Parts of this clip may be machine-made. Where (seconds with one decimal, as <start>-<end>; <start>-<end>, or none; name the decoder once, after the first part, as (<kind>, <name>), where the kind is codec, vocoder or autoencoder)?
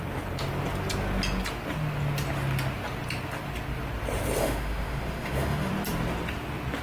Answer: 4.4-5.7 (autoencoder, DAC-VAE)